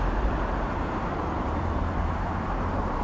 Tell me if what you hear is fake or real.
fake